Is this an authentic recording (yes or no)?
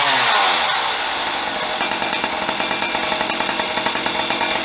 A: yes